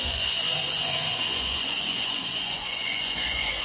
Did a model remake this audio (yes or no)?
yes